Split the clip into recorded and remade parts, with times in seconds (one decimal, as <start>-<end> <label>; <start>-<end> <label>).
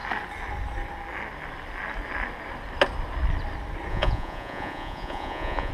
0.0-3.9 recorded; 3.9-5.7 remade